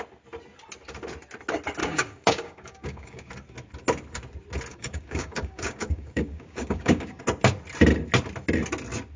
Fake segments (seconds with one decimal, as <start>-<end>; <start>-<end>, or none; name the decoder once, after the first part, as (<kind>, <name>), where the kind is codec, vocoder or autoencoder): 1.8-3.3 (codec, DAC); 4.7-7.2